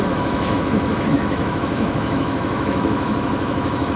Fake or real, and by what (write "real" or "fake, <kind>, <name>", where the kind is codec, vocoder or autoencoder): fake, autoencoder, DAC-VAE